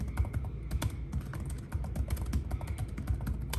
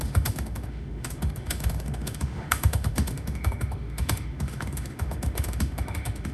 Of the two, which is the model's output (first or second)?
second